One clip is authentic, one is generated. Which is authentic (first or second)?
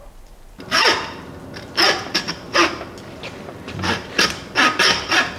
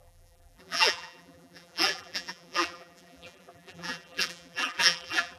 first